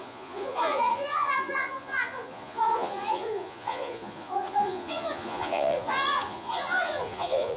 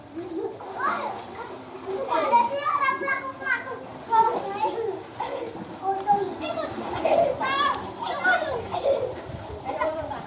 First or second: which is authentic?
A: second